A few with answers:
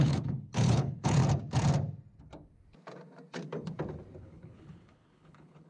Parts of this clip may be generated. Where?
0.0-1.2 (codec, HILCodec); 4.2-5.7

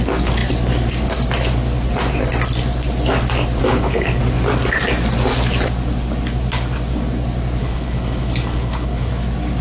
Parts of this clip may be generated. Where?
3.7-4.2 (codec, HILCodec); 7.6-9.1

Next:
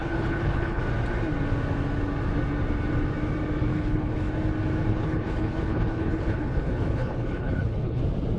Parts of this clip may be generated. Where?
0.0-0.8 (codec, HILCodec); 3.7-4.3; 4.9-8.0